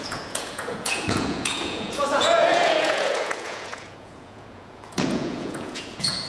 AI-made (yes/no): yes